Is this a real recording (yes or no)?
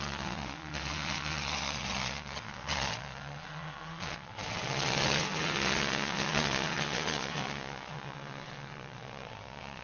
no